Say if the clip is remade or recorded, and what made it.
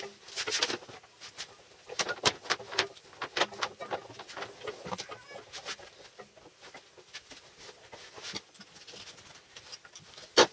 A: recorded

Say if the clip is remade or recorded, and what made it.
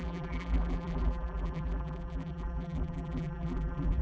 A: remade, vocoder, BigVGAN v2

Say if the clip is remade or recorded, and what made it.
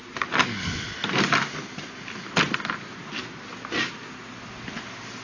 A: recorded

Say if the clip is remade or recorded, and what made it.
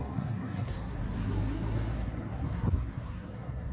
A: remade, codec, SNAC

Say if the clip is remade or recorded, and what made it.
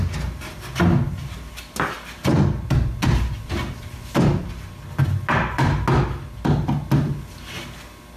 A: recorded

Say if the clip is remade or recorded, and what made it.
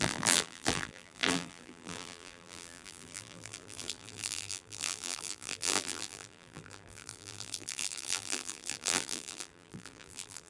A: remade, vocoder, BigVGAN v2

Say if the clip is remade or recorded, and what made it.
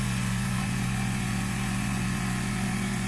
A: remade, vocoder, Vocos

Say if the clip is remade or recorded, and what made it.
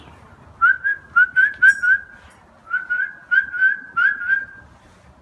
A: recorded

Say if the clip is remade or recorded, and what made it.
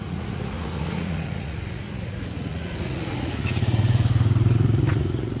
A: remade, vocoder, Vocos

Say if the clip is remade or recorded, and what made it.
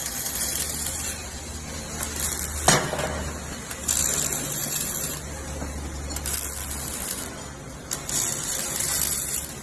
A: recorded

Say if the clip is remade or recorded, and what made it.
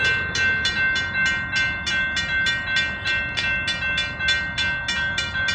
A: recorded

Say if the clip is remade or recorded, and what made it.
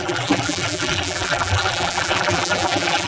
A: remade, vocoder, BigVGAN v2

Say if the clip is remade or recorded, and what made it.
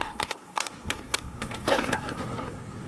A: remade, codec, SNAC